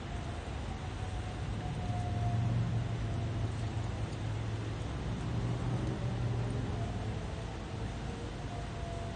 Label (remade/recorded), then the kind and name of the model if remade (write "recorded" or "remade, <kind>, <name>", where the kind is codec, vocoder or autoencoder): recorded